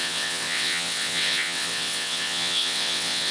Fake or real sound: fake